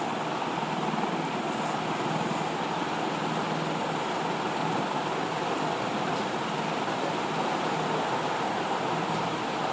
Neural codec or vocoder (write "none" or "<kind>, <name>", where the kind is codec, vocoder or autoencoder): none